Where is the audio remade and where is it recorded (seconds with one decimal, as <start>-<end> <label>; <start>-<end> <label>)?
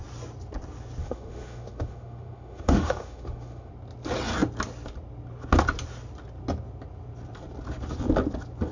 0.0-1.0 recorded; 1.0-3.7 remade; 3.7-8.7 recorded